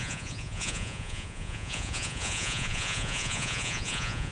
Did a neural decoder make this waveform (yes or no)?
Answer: yes